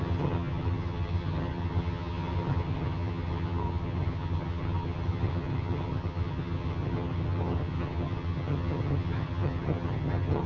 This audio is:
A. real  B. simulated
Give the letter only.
B